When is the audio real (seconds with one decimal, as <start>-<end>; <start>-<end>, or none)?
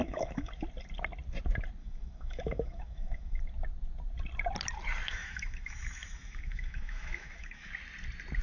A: 0.5-1.8; 3.4-5.1; 7.7-8.4